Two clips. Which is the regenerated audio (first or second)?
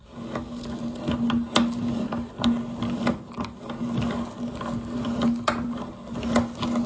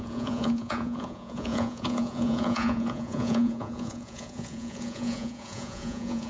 second